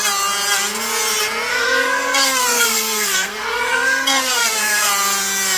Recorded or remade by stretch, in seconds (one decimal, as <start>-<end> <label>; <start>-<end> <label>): 0.0-1.5 recorded; 1.5-4.9 remade; 4.9-5.6 recorded